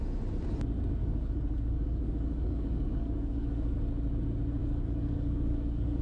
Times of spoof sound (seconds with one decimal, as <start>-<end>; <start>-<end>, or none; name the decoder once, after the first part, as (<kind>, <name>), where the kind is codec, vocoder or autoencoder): 1.0-3.8 (codec, DAC); 4.6-6.0